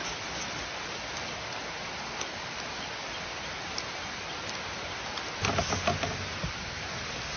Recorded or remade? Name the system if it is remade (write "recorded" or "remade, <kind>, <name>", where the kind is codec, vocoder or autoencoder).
recorded